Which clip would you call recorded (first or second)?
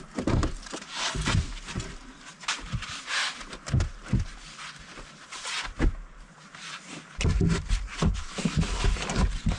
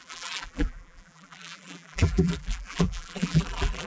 first